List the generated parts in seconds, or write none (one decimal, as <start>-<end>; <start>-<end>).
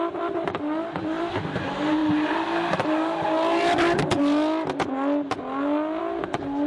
none